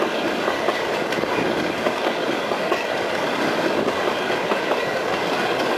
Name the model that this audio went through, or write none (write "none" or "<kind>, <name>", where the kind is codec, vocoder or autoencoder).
codec, DAC